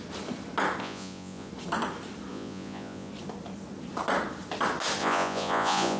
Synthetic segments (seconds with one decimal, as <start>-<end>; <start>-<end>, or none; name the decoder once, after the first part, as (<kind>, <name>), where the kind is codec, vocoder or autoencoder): 0.8-1.5 (vocoder, Vocos); 2.3-3.1; 5.0-6.0